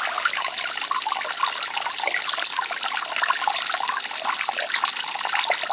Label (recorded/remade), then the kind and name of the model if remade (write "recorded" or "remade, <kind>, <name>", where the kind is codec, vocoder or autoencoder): recorded